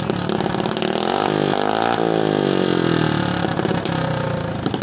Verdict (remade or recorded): recorded